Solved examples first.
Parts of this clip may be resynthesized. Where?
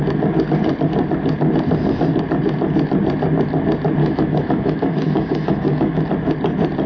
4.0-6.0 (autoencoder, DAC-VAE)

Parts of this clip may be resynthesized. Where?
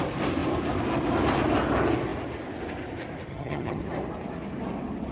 3.3-3.8 (vocoder, HiFi-GAN)